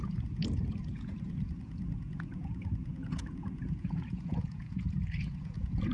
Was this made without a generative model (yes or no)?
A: no